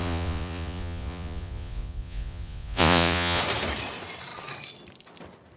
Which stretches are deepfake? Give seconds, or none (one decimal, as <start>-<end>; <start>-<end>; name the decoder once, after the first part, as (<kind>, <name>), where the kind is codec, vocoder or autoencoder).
0.0-3.4 (vocoder, Vocos)